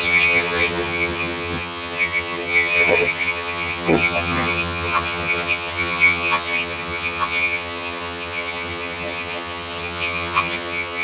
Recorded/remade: remade